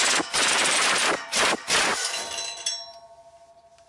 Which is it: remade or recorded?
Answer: remade